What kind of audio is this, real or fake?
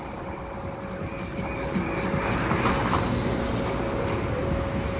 real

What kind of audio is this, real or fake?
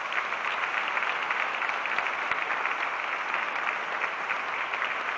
real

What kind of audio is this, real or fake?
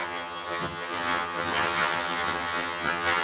fake